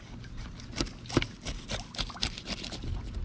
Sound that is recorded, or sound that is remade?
recorded